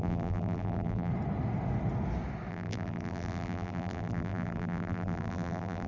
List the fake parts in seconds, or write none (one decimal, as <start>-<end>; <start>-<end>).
0.0-1.1; 2.5-5.9